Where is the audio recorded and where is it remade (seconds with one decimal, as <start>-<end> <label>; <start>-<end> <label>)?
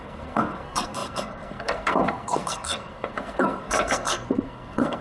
0.0-5.0 remade